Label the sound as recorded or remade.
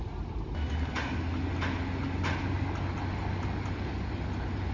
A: recorded